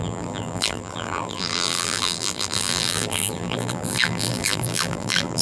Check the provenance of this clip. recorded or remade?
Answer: remade